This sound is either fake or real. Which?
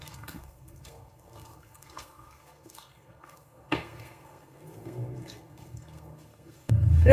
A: fake